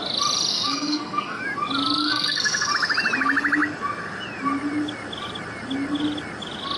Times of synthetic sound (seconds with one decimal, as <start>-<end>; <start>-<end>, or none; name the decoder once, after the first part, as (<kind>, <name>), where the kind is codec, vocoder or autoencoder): 0.5-1.4 (codec, SNAC); 2.0-2.7